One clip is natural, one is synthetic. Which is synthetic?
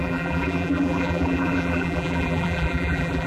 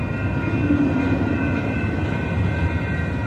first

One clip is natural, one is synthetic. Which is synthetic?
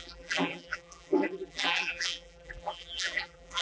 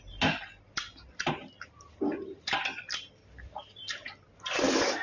first